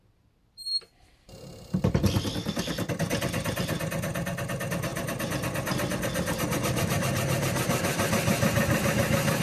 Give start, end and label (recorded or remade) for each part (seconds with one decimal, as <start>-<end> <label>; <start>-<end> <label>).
0.0-1.1 recorded; 1.1-2.9 remade; 2.9-4.9 recorded; 4.9-8.1 remade; 8.1-9.4 recorded